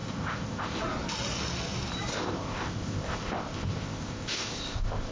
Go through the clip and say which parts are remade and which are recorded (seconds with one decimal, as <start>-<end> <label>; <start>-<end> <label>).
0.0-0.8 remade; 0.8-2.1 recorded; 2.1-5.1 remade